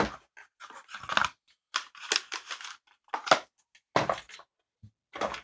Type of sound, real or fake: real